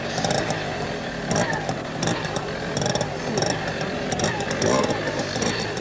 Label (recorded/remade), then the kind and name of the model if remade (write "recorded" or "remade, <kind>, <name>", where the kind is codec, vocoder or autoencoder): recorded